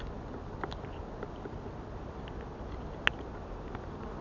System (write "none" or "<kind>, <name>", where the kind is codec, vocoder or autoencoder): none